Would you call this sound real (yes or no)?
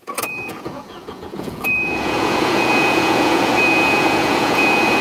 no